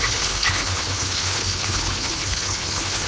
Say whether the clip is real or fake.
fake